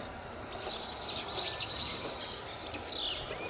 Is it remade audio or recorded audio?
recorded